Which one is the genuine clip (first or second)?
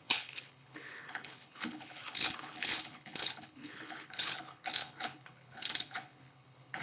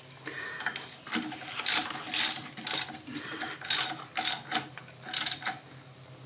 second